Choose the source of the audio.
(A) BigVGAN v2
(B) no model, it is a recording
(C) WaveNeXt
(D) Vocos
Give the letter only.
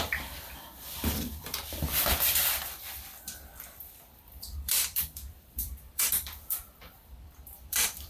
A